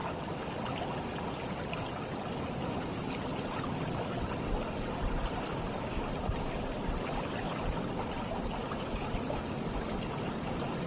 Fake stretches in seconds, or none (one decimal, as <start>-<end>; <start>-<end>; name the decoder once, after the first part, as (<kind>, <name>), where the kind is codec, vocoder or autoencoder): none